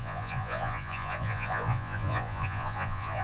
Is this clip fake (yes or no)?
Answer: yes